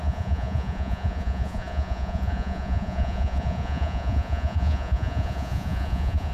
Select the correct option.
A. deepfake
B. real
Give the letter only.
A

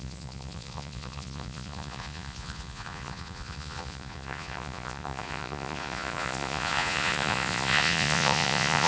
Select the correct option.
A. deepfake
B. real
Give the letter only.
A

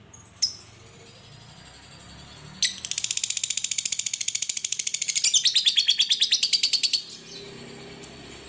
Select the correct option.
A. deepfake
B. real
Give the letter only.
B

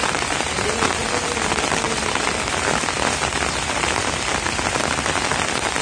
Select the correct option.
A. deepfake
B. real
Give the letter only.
B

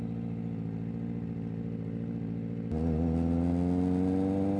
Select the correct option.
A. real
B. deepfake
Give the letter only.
A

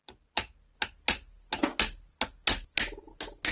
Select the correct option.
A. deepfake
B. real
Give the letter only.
B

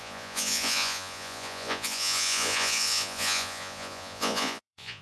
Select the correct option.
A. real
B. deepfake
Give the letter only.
B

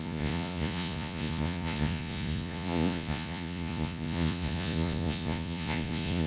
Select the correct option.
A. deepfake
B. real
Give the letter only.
A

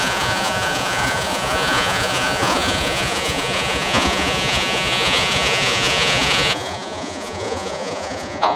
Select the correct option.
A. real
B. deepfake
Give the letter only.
B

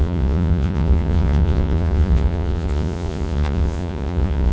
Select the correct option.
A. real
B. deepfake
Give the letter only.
B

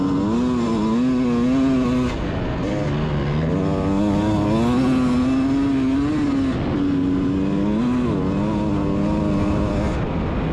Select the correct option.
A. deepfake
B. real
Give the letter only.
B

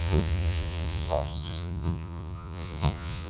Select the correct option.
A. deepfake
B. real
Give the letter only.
A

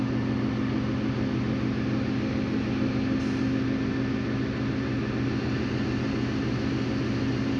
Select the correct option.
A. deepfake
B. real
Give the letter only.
B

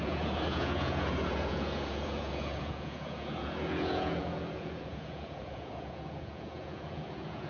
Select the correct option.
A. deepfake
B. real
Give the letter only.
A